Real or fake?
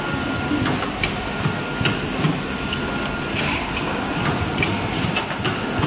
real